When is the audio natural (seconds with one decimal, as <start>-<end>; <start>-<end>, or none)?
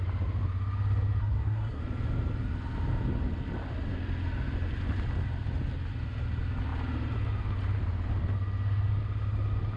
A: 0.0-1.2; 1.8-9.8